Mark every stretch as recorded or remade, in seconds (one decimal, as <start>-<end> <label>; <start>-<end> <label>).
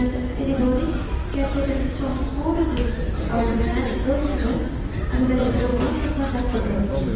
0.0-7.2 recorded